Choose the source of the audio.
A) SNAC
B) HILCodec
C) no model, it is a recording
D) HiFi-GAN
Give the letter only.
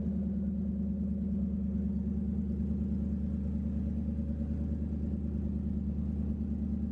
C